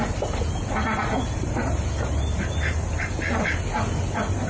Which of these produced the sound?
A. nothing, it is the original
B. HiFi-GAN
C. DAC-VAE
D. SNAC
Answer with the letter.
A